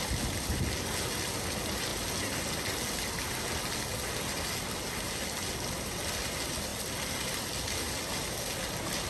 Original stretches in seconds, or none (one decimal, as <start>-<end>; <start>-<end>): 0.0-9.1